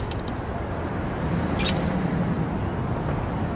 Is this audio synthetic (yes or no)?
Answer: no